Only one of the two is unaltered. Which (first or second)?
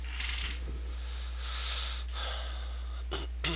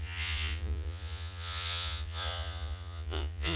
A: first